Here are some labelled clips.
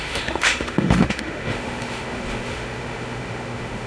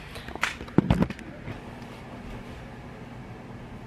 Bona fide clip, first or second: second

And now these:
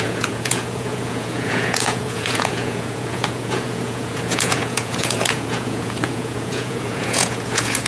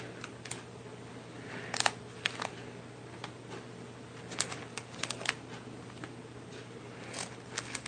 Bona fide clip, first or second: second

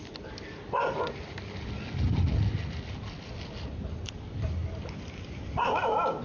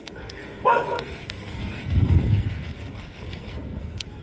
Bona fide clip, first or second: first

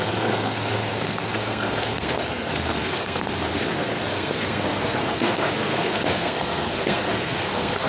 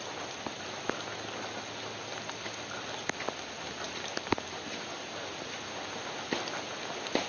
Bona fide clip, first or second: second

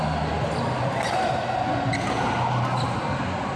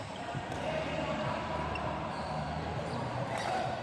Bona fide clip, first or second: first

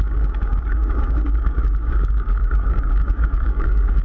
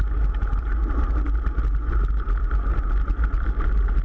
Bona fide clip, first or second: second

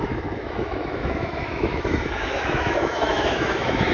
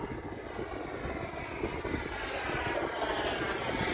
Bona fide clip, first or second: second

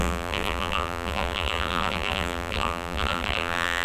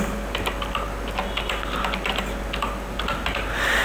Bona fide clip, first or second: second